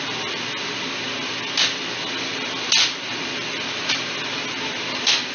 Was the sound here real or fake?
real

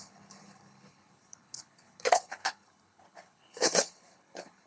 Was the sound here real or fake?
fake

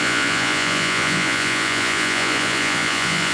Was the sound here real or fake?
fake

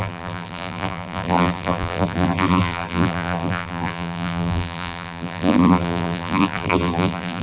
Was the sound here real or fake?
fake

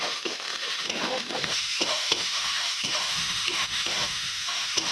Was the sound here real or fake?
fake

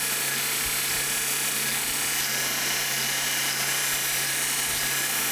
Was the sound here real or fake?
real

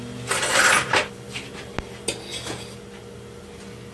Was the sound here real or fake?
real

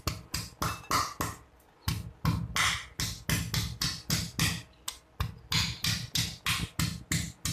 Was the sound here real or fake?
real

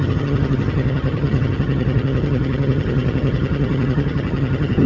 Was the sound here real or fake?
fake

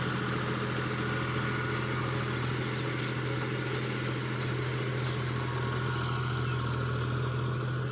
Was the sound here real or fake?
real